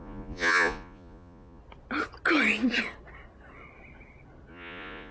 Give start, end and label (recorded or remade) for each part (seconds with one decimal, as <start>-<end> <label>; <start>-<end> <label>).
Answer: 0.0-1.6 remade; 1.6-4.5 recorded; 4.5-5.1 remade